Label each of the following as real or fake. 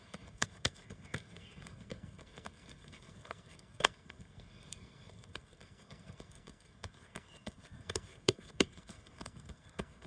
fake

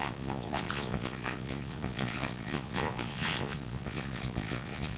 fake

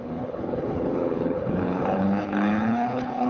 fake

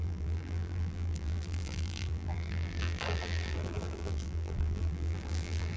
fake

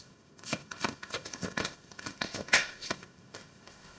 fake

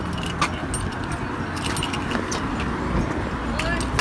real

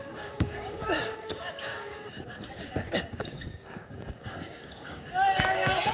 fake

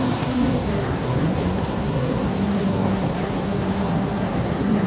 fake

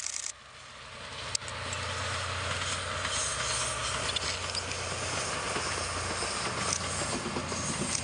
real